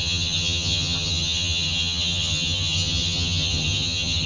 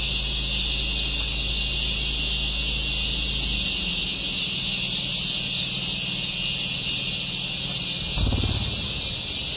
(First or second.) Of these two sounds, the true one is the second